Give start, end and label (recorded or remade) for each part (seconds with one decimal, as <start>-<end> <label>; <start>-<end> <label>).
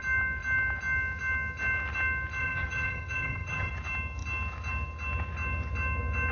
0.0-2.4 recorded; 2.4-3.7 remade; 3.7-6.3 recorded